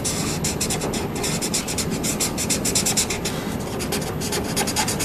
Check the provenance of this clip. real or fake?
real